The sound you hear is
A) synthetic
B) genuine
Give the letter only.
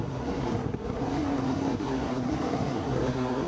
A